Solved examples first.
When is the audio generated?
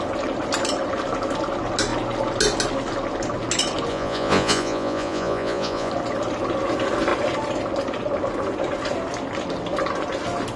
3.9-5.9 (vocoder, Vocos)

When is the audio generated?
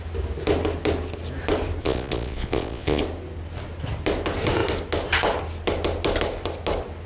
1.8-3.0 (vocoder, Vocos)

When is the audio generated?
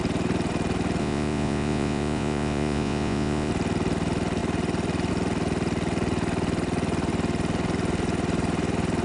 1.0-3.5 (vocoder, Vocos)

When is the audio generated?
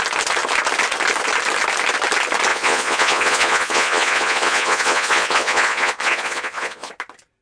2.5-6.9 (vocoder, Vocos)